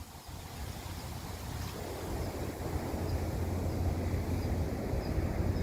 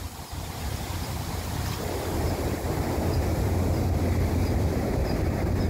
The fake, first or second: second